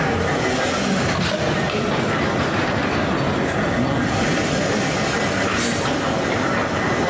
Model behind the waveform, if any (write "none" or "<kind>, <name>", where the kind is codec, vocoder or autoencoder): none